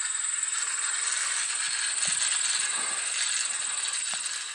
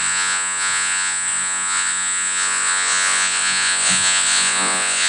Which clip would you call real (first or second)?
first